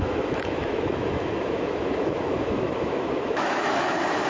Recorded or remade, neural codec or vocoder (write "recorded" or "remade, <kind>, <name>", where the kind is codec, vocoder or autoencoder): remade, autoencoder, DAC-VAE